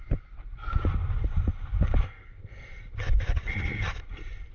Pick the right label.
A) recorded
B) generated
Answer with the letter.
A